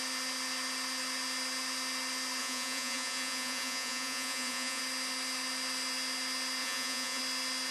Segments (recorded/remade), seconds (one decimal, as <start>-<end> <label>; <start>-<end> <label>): 0.0-2.4 recorded; 2.4-4.8 remade; 4.8-6.6 recorded; 6.6-7.2 remade; 7.2-7.7 recorded